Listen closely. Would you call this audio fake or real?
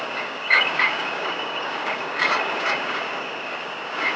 fake